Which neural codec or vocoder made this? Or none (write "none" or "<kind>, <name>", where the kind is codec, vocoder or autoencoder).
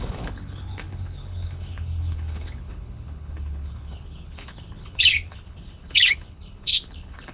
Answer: codec, HILCodec